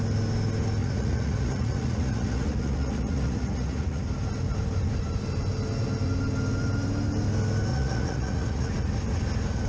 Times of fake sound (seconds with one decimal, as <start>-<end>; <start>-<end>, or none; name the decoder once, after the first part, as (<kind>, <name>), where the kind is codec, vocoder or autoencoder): 0.8-4.0 (vocoder, Vocos); 7.7-8.7